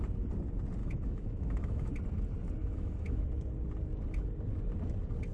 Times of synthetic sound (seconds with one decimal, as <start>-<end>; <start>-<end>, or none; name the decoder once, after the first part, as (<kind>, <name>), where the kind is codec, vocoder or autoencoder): 0.8-1.9 (autoencoder, DAC-VAE); 2.6-3.3